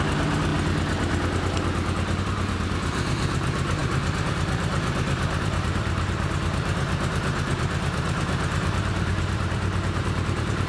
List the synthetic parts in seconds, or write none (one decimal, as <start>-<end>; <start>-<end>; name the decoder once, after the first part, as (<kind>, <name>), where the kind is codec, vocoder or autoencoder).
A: 0.0-0.5 (vocoder, BigVGAN v2); 2.2-10.7